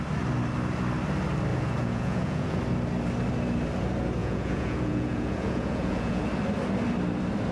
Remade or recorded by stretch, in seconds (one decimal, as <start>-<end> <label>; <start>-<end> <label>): 0.0-1.5 recorded; 1.5-2.6 remade; 2.6-4.2 recorded; 4.2-6.2 remade; 6.2-7.5 recorded